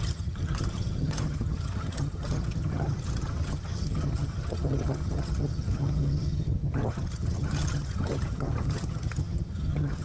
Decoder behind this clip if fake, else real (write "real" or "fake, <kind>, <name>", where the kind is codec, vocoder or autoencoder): fake, vocoder, HiFi-GAN